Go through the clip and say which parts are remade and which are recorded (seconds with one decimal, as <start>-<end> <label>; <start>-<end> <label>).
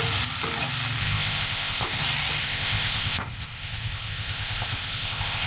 0.0-1.0 recorded; 1.0-2.0 remade; 2.0-2.4 recorded; 2.4-5.5 remade